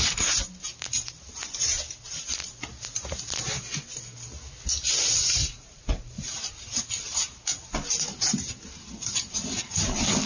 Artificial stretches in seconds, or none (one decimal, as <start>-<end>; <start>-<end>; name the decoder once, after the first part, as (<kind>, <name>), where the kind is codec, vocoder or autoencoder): 5.4-6.3 (vocoder, BigVGAN v2)